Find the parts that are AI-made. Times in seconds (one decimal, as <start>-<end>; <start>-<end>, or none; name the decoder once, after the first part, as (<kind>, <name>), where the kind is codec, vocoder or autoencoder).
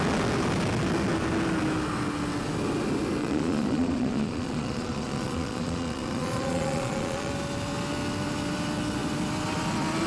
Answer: 3.2-7.3 (vocoder, Vocos)